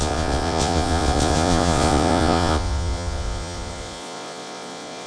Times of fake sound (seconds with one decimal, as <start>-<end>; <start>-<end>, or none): 0.0-5.1